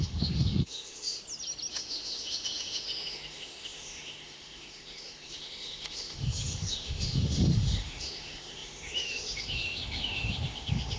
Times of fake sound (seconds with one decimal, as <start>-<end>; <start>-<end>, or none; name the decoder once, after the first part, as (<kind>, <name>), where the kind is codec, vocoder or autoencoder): 0.0-1.2 (autoencoder, DAC-VAE); 1.7-11.0